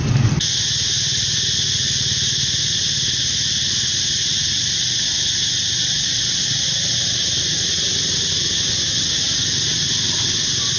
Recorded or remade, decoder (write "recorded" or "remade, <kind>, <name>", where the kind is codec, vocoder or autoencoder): recorded